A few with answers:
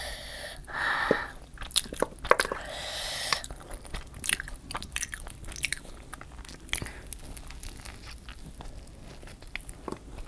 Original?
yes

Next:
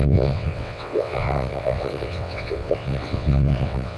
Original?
no